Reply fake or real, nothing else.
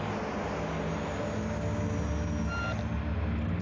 real